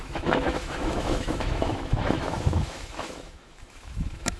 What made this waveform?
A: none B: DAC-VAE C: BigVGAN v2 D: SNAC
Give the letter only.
B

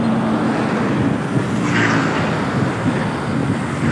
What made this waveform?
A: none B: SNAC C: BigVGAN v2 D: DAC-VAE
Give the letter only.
A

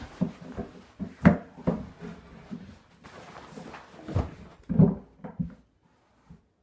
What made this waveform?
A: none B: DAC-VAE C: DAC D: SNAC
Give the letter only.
A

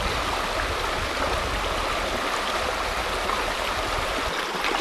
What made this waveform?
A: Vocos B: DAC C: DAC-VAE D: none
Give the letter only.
D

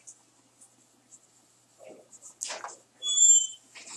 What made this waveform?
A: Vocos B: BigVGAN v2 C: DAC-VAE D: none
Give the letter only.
D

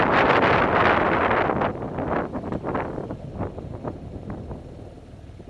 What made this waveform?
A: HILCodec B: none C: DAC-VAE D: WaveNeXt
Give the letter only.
B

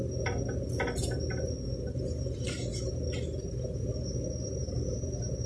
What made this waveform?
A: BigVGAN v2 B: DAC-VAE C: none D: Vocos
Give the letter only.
C